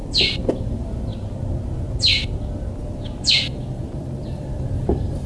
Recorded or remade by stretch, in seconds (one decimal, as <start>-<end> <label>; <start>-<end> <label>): 0.0-0.5 recorded; 0.5-1.1 remade; 1.1-3.3 recorded; 3.3-5.3 remade